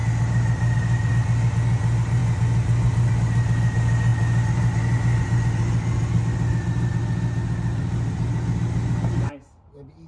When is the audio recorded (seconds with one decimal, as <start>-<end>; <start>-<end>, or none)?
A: 0.0-10.1